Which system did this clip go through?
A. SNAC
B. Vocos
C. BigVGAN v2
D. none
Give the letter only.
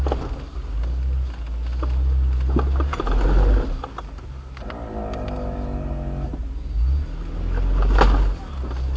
D